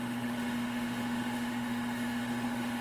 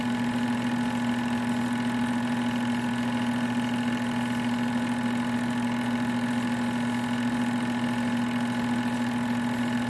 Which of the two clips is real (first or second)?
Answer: second